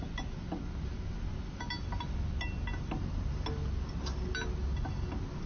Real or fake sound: real